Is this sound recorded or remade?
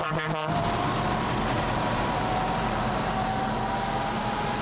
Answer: remade